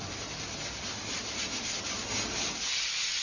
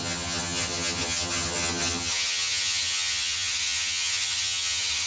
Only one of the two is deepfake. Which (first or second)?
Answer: second